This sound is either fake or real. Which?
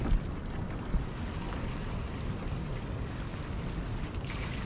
real